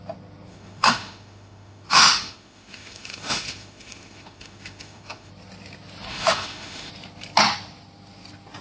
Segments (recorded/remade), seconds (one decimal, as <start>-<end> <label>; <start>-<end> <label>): 0.0-0.5 recorded; 0.5-5.3 remade; 5.3-6.1 recorded; 6.1-6.9 remade; 6.9-8.6 recorded

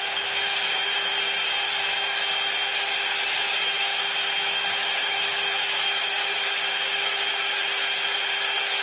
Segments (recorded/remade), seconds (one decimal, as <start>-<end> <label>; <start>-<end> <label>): 0.0-1.1 remade; 1.1-1.7 recorded; 1.7-2.2 remade; 2.2-3.1 recorded; 3.1-8.8 remade

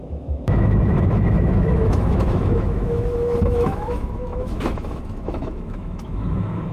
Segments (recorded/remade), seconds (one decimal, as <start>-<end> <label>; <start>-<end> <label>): 0.0-6.7 remade